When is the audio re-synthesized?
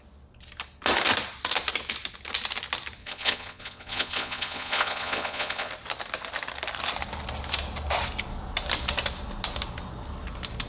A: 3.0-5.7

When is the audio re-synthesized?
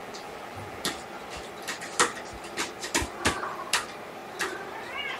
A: 0.0-0.9